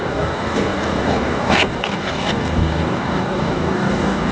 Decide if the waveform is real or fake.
fake